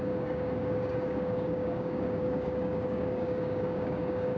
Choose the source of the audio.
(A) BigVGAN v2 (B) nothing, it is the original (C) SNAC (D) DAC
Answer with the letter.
D